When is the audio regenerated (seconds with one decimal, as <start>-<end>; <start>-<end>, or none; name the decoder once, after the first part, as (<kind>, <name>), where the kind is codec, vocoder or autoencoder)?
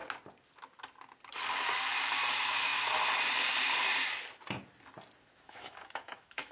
2.3-2.7 (autoencoder, DAC-VAE); 5.2-6.5